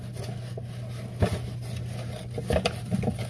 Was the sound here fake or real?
real